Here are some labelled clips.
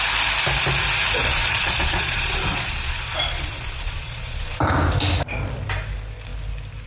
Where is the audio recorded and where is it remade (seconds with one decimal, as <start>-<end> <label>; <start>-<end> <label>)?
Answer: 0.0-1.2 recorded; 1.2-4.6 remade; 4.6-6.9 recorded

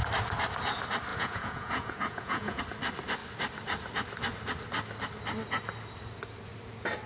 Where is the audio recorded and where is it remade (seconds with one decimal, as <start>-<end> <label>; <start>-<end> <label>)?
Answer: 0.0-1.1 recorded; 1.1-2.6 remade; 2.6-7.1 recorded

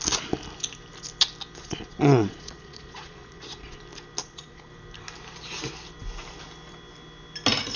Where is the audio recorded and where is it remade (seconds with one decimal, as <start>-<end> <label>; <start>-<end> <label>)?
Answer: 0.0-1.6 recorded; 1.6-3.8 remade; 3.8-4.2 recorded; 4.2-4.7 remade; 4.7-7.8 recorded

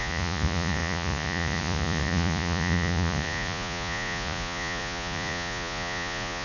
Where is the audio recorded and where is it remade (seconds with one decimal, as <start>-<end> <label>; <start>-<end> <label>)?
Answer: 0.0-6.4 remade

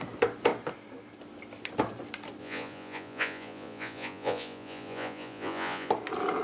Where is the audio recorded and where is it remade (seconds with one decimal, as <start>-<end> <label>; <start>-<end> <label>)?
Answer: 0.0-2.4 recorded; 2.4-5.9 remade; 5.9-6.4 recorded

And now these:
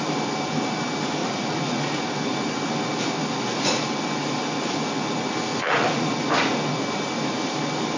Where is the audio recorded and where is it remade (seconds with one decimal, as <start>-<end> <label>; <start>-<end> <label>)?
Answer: 0.0-1.2 recorded; 1.2-2.0 remade; 2.0-5.5 recorded; 5.5-6.2 remade; 6.2-8.0 recorded